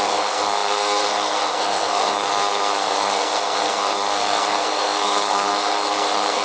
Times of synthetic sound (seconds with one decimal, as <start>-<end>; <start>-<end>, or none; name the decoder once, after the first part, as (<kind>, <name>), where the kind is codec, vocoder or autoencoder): 0.0-6.4 (codec, SNAC)

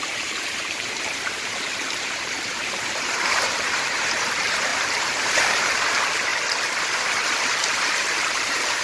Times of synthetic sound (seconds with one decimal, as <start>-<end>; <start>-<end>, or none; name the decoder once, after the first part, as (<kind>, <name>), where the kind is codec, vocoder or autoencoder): 0.0-6.3 (vocoder, BigVGAN v2); 7.4-8.8

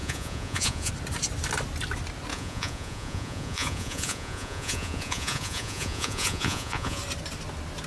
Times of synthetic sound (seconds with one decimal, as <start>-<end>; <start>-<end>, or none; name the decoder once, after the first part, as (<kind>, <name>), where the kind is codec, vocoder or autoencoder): 0.0-0.9 (vocoder, Vocos); 2.3-7.0

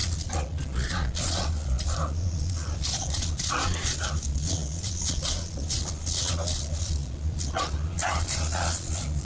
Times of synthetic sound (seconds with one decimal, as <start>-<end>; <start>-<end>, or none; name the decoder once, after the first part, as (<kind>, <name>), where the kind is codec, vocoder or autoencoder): 0.0-9.2 (vocoder, Vocos)

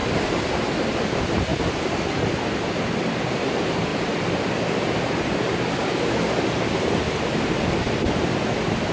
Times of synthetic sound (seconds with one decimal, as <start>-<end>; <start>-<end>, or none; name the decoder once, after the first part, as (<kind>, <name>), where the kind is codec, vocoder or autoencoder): 0.0-1.5 (vocoder, BigVGAN v2); 3.3-3.9; 4.6-8.9